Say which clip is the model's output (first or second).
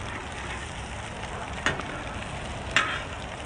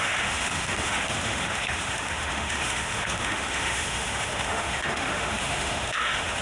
second